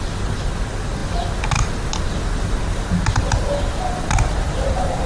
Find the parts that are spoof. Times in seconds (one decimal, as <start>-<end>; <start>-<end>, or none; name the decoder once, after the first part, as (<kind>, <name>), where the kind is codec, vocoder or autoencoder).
none